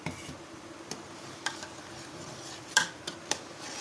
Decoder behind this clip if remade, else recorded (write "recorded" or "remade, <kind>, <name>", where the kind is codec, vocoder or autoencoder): remade, vocoder, BigVGAN v2